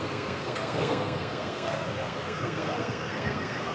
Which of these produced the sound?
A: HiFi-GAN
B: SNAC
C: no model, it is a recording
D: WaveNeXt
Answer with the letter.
B